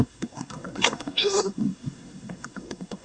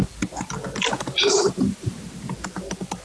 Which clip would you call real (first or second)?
second